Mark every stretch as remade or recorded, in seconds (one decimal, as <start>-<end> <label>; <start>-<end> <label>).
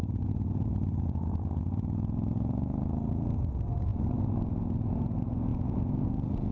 0.0-3.9 remade; 3.9-4.9 recorded; 4.9-6.5 remade